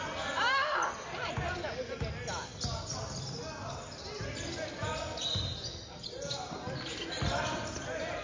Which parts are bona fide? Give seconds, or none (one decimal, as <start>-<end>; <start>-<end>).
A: 0.0-8.2